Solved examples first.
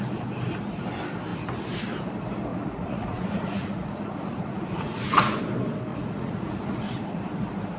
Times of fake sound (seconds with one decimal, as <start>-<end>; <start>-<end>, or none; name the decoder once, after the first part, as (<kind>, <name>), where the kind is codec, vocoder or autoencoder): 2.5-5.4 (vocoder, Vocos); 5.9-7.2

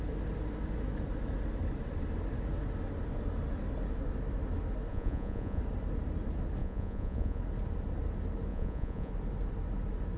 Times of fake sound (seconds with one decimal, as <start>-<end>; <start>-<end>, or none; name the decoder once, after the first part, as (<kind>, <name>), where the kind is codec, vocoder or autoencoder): 4.9-5.6 (vocoder, Vocos); 6.6-7.4; 8.5-9.1

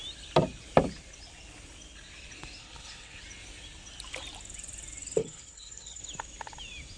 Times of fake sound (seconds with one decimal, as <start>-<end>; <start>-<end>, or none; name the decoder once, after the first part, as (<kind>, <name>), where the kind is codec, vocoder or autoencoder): 2.6-3.2 (codec, HILCodec); 5.2-6.0

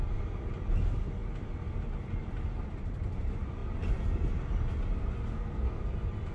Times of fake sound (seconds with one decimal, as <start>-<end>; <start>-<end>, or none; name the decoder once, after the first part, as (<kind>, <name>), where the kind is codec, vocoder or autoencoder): 5.3-5.8 (codec, SNAC)